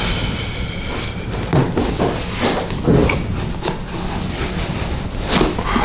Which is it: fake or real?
real